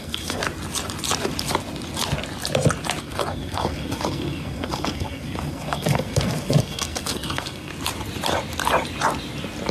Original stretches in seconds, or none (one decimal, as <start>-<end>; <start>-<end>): 0.4-3.0; 7.7-9.7

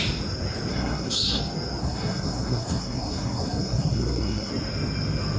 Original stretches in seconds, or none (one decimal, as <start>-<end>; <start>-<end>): 0.0-0.7; 1.4-1.8; 4.5-5.4

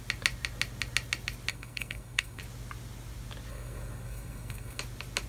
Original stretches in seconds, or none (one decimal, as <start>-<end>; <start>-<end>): 0.0-1.5; 2.4-3.5; 4.8-5.3

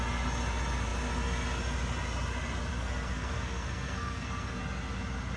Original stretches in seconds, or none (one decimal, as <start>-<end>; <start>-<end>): 0.0-2.7; 4.6-5.4

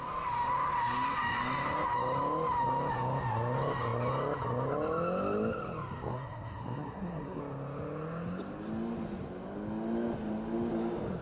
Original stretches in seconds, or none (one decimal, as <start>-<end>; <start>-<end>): 0.0-6.1; 7.4-11.2